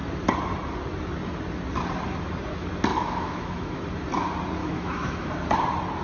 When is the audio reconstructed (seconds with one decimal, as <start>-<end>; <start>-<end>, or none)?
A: 2.9-3.8; 4.6-5.3